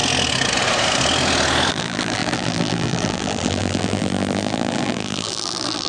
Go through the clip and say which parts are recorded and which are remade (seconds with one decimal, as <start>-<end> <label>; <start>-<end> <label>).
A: 0.0-1.7 recorded; 1.7-5.9 remade

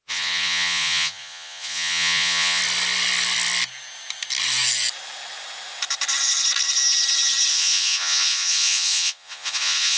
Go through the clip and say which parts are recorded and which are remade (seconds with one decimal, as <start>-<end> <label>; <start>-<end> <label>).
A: 0.0-2.6 remade; 2.6-7.5 recorded; 7.5-10.0 remade

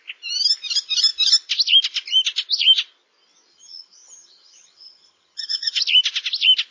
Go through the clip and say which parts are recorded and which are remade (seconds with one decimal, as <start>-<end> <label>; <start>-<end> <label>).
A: 0.0-3.5 recorded; 3.5-5.8 remade; 5.8-6.7 recorded

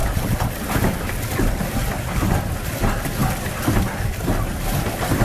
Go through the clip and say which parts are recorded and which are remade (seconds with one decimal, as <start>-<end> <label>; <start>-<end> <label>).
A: 0.0-2.5 remade; 2.5-5.2 recorded

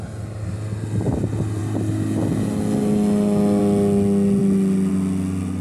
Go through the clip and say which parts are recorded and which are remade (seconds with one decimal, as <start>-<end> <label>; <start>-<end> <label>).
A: 0.0-5.6 recorded

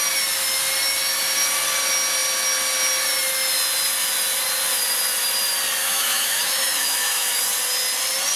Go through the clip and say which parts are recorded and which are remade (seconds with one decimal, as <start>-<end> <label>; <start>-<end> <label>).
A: 0.0-5.8 recorded; 5.8-7.4 remade; 7.4-8.4 recorded

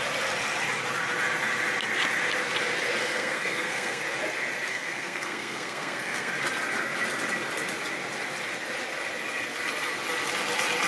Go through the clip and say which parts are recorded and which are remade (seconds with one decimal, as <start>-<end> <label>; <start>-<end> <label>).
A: 0.0-3.0 recorded; 3.0-4.0 remade; 4.0-4.7 recorded; 4.7-6.3 remade; 6.3-10.9 recorded